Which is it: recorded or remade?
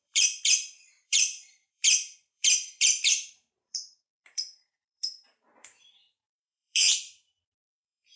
remade